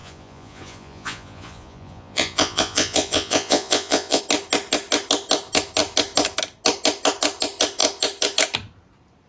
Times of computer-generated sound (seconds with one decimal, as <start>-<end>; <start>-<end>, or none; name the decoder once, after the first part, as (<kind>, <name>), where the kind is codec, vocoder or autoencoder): 0.0-4.2 (vocoder, Vocos)